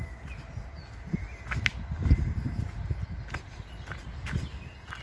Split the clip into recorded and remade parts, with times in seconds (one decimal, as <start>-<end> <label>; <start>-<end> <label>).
0.0-5.0 recorded